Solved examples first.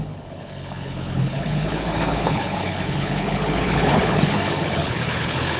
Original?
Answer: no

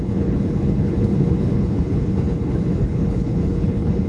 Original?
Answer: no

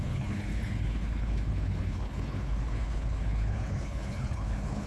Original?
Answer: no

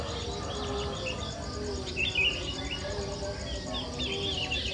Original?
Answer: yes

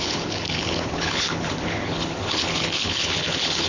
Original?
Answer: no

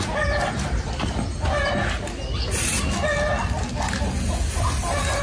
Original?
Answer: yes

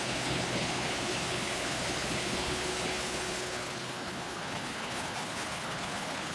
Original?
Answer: no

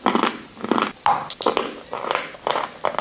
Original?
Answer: yes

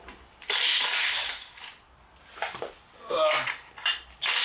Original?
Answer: yes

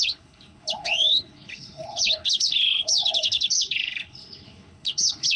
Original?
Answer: no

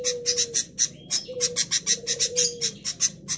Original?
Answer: yes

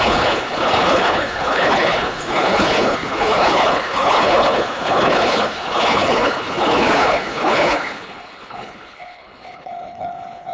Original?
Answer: no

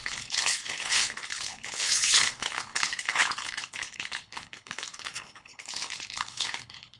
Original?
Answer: no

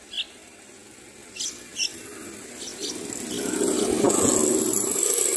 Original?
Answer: yes